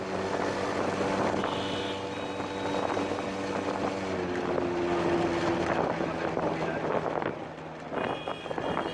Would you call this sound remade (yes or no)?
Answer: no